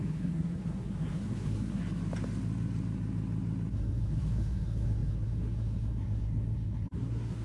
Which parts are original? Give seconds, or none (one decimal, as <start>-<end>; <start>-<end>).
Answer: 1.8-3.7